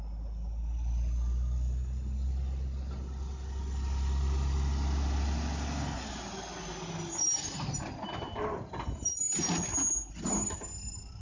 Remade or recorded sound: recorded